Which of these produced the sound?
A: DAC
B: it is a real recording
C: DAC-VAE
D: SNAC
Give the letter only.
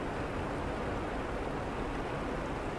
B